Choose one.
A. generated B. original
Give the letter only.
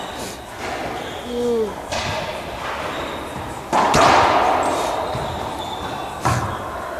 B